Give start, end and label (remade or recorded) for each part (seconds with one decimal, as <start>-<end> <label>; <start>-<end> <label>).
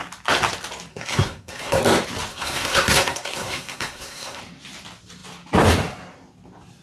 0.0-0.9 recorded; 0.9-1.8 remade; 1.8-2.3 recorded; 2.3-4.4 remade; 4.4-6.8 recorded